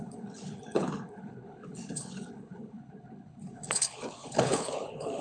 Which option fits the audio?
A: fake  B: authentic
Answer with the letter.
A